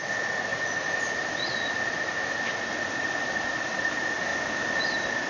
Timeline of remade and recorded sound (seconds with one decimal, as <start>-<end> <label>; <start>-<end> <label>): 0.0-0.5 recorded; 0.5-3.7 remade; 3.7-4.3 recorded; 4.3-4.8 remade; 4.8-5.3 recorded